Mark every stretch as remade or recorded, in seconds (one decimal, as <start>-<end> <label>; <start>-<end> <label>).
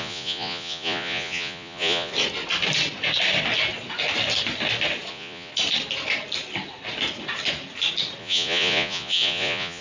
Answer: 0.0-2.1 remade; 2.1-5.1 recorded; 5.1-5.5 remade; 5.5-8.2 recorded; 8.2-9.8 remade